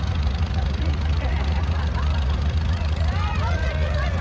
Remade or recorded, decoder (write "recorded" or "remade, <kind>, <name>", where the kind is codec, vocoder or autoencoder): remade, vocoder, Vocos